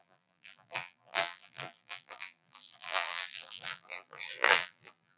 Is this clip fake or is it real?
fake